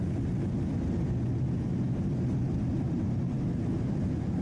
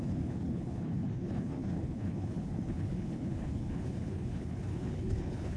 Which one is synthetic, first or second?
second